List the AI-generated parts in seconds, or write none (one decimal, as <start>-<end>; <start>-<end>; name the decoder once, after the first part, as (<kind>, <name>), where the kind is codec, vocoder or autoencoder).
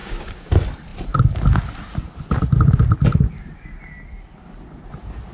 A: 0.0-0.5 (codec, DAC)